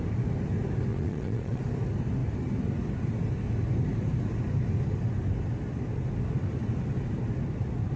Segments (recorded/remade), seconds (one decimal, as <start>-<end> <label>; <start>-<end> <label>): 0.0-0.9 recorded; 0.9-1.6 remade; 1.6-8.0 recorded